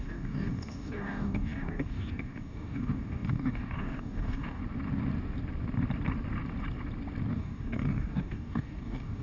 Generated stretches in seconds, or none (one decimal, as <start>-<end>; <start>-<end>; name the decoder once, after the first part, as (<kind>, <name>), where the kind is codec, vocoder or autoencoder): 0.0-4.6 (codec, DAC); 7.3-9.2